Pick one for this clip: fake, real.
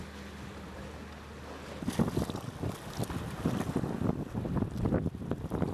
real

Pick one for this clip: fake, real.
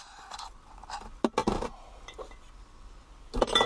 real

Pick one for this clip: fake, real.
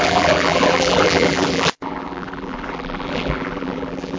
fake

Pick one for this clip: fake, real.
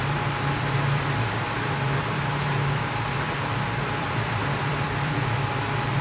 fake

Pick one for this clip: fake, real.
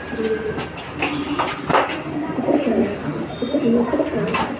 real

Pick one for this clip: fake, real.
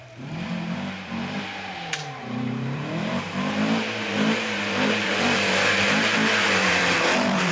fake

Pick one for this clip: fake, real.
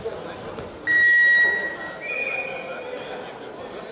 real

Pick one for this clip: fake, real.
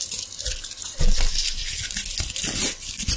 real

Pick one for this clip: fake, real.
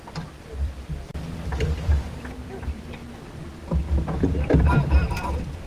fake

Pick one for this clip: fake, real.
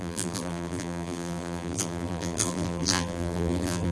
fake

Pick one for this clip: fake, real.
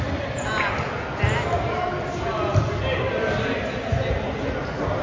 real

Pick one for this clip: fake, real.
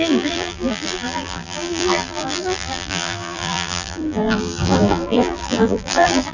fake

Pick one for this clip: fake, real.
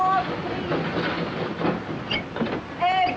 real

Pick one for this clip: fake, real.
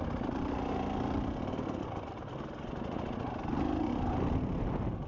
fake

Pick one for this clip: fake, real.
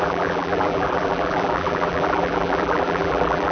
fake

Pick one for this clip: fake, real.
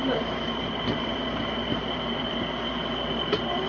real